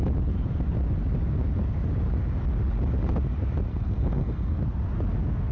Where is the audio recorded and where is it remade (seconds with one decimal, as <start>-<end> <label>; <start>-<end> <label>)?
0.0-3.7 recorded; 3.7-4.6 remade; 4.6-5.5 recorded

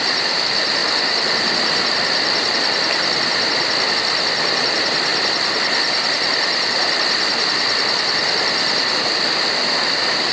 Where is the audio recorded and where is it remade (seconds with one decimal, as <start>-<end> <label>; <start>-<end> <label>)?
0.0-10.3 recorded